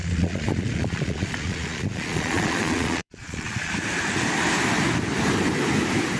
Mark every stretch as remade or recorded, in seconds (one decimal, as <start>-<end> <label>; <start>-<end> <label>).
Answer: 0.0-3.7 remade; 3.7-6.2 recorded